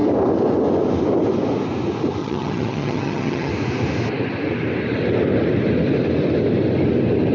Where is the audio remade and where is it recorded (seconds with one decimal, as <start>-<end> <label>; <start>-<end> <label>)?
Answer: 0.0-2.2 recorded; 2.2-3.5 remade; 3.5-7.3 recorded